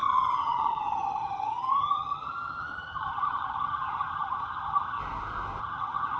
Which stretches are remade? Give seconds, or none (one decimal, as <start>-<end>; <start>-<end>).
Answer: 0.0-5.0; 5.6-6.2